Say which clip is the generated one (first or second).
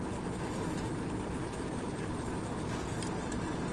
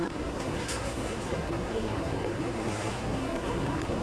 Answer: second